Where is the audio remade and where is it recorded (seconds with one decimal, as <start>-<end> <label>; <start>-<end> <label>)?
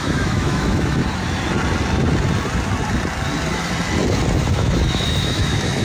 0.0-1.0 remade; 1.0-4.5 recorded; 4.5-5.8 remade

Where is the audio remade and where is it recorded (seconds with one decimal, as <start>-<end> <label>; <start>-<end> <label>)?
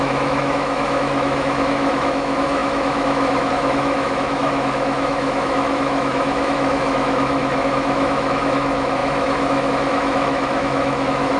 0.0-11.4 remade